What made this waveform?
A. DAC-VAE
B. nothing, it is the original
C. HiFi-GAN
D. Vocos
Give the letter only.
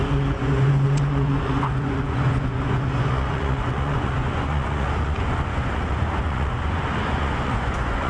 D